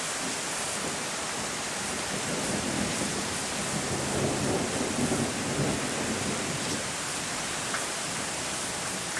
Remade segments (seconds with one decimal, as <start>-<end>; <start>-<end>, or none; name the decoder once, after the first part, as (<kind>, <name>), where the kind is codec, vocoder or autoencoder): 0.0-3.1 (vocoder, BigVGAN v2); 5.3-9.2